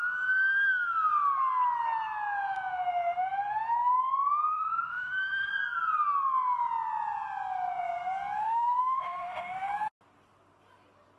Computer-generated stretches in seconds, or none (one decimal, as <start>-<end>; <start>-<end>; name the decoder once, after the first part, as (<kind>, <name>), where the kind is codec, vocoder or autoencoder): 4.5-5.5 (autoencoder, DAC-VAE); 8.4-9.7